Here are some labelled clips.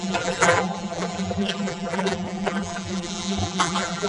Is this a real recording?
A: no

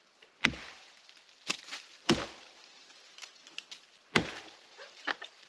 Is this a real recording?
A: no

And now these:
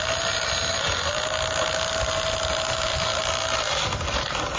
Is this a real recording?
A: yes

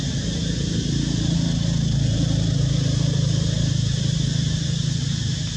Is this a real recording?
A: yes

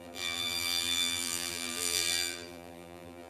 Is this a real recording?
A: no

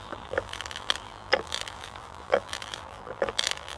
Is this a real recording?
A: no